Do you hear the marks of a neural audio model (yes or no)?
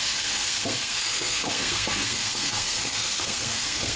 yes